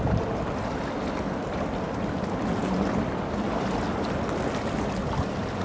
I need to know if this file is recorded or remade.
recorded